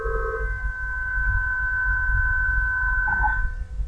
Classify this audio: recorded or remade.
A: recorded